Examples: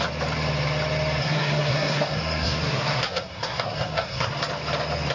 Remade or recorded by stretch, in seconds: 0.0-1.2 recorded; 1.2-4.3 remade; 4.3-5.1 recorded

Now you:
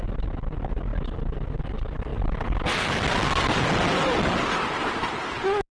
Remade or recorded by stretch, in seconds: 0.0-5.8 recorded

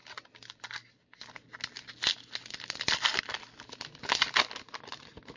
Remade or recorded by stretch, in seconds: 0.0-5.4 recorded

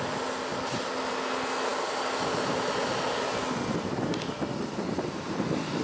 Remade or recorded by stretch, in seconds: 0.0-5.8 recorded

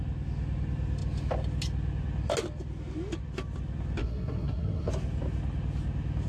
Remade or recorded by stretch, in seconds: 0.0-4.0 recorded; 4.0-4.9 remade; 4.9-6.3 recorded